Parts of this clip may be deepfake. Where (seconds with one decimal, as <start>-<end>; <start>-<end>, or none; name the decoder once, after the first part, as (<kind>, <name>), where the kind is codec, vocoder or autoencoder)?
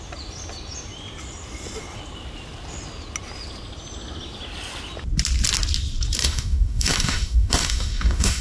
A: 6.2-8.4 (autoencoder, DAC-VAE)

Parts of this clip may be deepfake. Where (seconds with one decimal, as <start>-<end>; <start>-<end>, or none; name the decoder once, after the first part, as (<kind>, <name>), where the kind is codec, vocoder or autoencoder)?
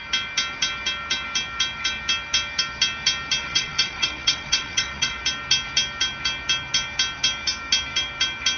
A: 3.4-5.2 (vocoder, WaveNeXt)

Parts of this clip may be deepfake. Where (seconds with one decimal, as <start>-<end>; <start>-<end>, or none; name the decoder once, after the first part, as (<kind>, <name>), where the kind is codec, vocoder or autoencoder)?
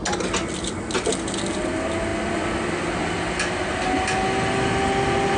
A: none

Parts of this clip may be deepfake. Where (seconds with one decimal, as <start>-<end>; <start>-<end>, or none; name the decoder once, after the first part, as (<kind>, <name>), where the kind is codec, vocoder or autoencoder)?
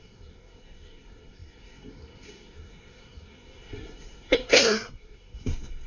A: 0.0-5.9 (codec, SNAC)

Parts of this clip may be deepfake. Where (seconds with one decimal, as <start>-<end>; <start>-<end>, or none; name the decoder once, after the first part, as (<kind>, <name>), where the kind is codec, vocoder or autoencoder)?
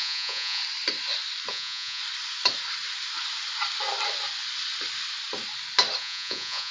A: 0.0-0.6 (vocoder, Vocos); 1.5-2.0; 6.0-6.7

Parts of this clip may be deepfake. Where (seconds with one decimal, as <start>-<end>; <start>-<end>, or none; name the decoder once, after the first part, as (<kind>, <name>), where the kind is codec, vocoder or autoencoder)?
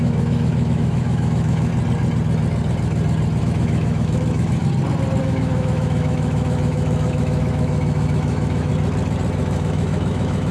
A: 0.0-1.7 (autoencoder, DAC-VAE); 3.4-4.6; 5.2-8.7; 9.4-10.5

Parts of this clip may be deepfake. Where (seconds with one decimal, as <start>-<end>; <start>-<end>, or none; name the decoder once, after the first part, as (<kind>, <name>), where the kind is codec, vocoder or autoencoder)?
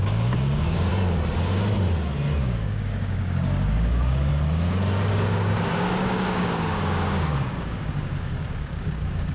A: 0.0-0.9 (codec, DAC); 2.4-4.3; 5.1-9.3